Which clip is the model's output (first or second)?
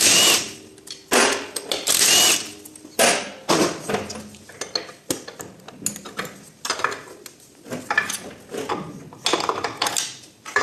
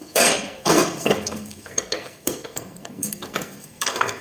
second